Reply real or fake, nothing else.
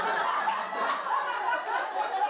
real